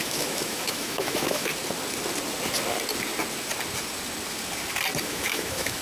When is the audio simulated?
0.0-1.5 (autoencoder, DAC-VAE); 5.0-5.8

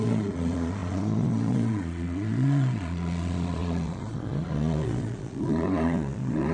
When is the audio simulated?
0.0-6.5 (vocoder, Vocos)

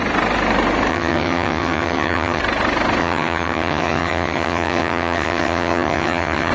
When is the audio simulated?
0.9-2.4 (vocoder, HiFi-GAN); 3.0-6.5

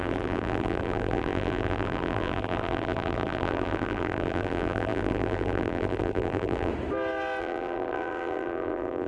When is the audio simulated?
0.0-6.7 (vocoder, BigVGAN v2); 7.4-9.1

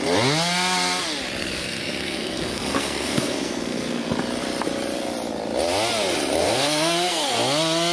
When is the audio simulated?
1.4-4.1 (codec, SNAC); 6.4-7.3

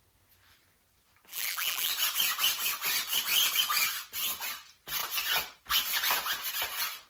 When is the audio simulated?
1.3-1.9 (vocoder, BigVGAN v2)

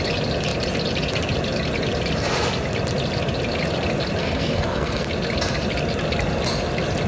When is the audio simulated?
4.2-5.1 (codec, SNAC)

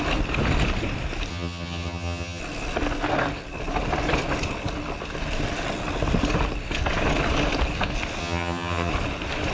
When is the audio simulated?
1.3-2.4 (vocoder, HiFi-GAN); 8.2-8.9